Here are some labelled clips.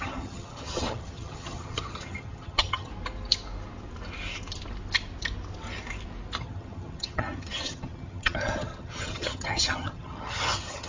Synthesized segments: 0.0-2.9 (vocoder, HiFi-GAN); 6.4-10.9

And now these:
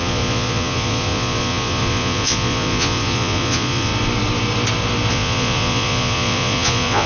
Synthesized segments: 0.0-3.9 (vocoder, Vocos); 5.1-7.1

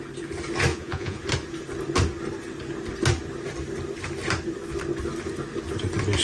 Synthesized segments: 0.7-1.2 (vocoder, Vocos)

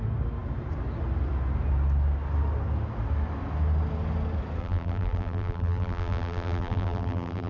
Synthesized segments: 4.6-7.5 (vocoder, BigVGAN v2)

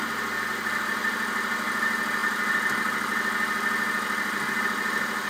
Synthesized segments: none

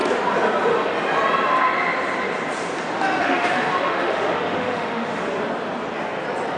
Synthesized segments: 3.2-5.2 (autoencoder, DAC-VAE)

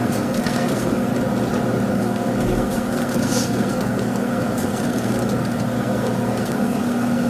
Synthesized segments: 0.0-1.1 (codec, SNAC); 1.9-7.3